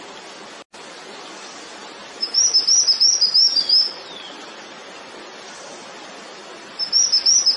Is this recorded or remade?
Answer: recorded